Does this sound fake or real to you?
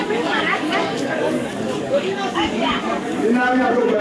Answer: fake